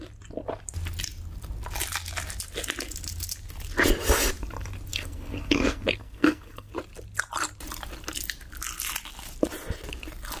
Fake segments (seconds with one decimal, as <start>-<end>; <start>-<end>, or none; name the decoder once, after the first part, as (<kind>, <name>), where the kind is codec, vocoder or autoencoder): 4.9-6.7 (codec, SNAC)